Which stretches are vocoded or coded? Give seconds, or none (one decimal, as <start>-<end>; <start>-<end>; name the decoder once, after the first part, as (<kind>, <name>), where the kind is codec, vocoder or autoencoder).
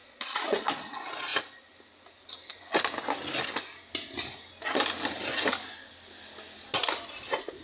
0.0-0.9 (vocoder, Vocos)